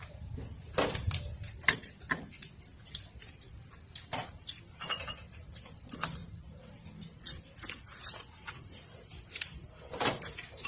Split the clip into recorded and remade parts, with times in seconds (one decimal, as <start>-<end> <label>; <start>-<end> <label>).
0.0-4.2 recorded; 4.2-5.4 remade; 5.4-10.7 recorded